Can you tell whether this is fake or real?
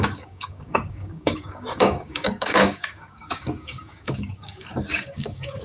fake